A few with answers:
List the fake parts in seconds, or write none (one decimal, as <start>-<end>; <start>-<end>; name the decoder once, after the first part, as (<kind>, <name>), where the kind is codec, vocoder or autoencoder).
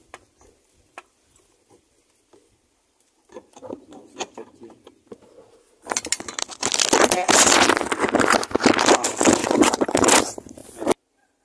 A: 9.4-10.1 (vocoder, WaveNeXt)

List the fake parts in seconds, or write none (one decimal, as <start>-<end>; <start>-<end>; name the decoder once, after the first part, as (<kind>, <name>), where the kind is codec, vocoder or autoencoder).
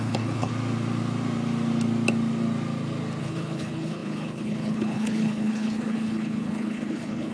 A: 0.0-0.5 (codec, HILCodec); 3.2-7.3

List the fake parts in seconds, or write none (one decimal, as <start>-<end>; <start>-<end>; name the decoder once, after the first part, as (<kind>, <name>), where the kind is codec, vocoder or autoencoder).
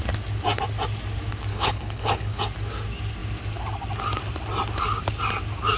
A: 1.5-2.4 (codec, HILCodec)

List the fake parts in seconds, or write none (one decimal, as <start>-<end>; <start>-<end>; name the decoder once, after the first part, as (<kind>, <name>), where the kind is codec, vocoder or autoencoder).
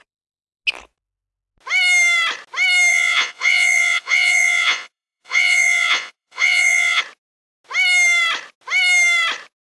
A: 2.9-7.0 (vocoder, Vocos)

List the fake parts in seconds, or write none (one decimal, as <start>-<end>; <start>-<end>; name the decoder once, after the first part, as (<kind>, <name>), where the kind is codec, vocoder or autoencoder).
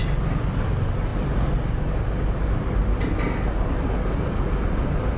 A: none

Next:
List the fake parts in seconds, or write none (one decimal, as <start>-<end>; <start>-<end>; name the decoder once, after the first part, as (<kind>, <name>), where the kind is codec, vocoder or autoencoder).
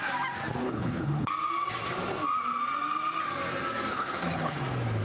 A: 0.6-1.3 (codec, HILCodec); 3.9-4.6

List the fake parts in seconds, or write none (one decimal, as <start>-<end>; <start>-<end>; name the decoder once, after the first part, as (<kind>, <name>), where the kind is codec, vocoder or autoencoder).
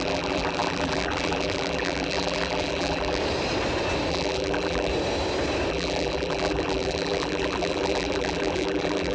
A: 0.0-3.2 (vocoder, BigVGAN v2); 4.1-4.9; 5.7-9.1